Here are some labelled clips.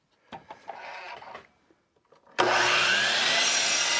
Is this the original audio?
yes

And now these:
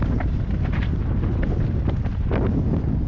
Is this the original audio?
yes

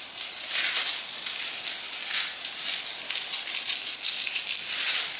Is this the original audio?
yes